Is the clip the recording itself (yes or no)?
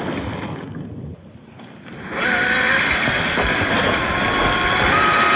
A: yes